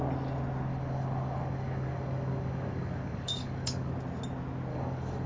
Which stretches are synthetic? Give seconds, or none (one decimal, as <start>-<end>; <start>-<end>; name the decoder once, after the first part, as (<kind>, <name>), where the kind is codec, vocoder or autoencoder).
0.7-3.9 (codec, DAC); 4.7-5.3